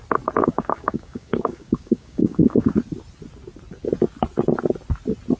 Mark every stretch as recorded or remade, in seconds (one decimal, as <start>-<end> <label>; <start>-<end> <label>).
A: 0.0-0.4 recorded; 0.4-2.8 remade; 2.8-5.4 recorded